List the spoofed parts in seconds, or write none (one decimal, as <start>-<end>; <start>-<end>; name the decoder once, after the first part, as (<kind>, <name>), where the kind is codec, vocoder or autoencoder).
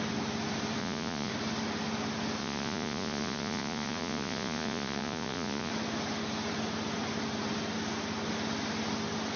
0.8-1.3 (vocoder, Vocos); 2.4-5.7